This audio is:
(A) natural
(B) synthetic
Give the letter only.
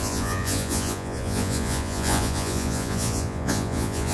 B